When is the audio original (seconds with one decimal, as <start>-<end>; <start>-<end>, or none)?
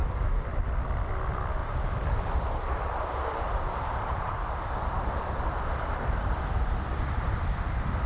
0.0-1.6; 4.7-8.1